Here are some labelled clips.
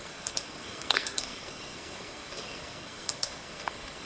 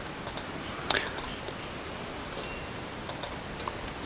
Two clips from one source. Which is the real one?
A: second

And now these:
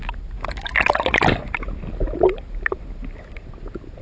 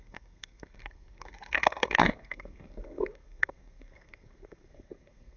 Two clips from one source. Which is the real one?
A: first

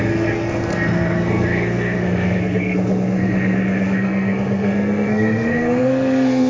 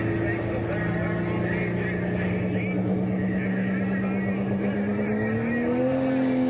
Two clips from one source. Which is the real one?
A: second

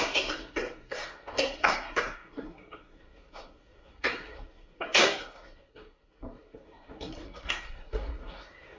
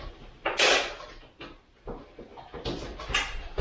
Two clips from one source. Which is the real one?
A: second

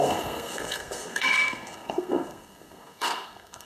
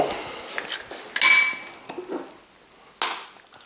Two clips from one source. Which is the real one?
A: second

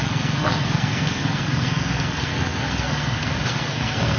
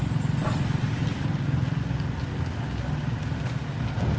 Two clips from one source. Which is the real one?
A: second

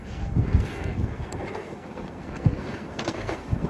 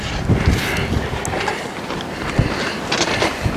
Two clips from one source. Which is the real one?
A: second